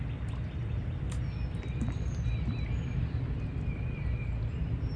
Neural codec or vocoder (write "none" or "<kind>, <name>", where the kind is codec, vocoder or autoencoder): none